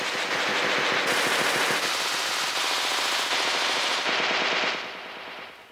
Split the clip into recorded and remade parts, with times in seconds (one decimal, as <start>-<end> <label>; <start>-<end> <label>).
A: 0.0-5.7 recorded